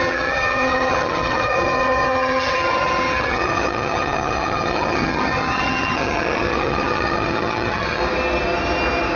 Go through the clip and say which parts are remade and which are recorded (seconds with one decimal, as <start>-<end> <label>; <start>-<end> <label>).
0.0-8.0 remade; 8.0-9.2 recorded